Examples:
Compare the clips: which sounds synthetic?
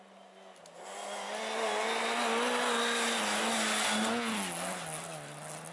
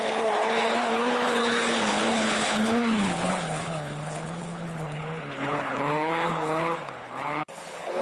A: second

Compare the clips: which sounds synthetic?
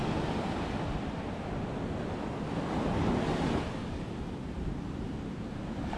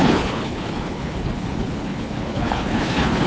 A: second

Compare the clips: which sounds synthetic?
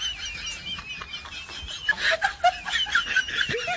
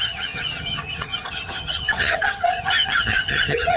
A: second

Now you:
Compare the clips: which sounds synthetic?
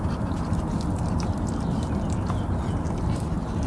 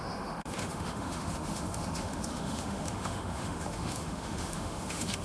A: second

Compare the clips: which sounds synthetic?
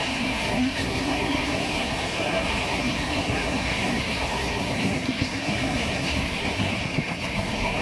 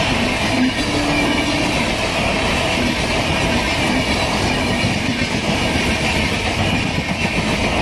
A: first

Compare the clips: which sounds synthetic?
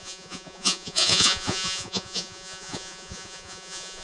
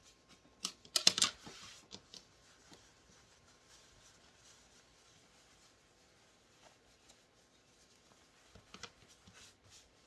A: first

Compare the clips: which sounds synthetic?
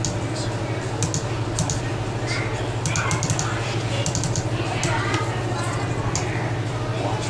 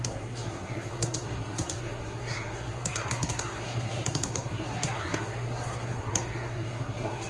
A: second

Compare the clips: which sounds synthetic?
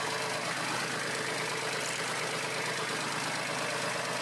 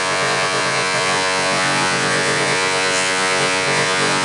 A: second